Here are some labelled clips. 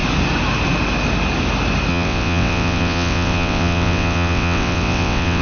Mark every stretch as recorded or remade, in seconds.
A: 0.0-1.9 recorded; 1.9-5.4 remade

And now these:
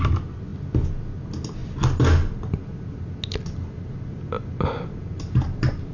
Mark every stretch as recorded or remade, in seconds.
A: 0.0-5.9 recorded

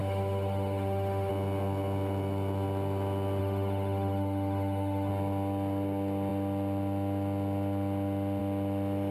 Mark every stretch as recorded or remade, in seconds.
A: 0.0-1.3 remade; 1.3-3.4 recorded; 3.4-5.1 remade; 5.1-9.1 recorded

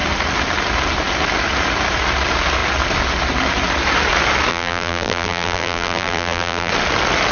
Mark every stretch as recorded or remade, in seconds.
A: 0.0-4.5 recorded; 4.5-6.7 remade; 6.7-7.3 recorded

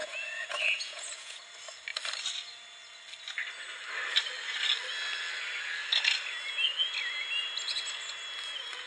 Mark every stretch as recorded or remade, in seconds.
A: 0.0-1.4 remade; 1.4-8.9 recorded

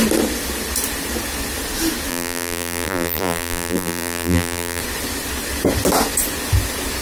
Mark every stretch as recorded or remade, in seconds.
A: 0.0-2.1 recorded; 2.1-4.8 remade; 4.8-7.0 recorded

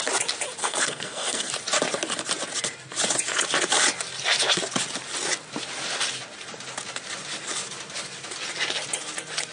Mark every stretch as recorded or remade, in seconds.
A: 0.0-0.6 recorded; 0.6-1.5 remade; 1.5-9.5 recorded